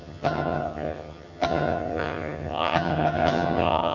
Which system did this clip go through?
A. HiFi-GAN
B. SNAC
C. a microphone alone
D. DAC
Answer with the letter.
A